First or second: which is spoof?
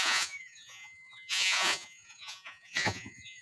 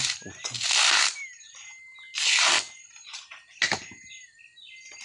first